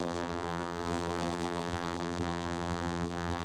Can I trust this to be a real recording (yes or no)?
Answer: no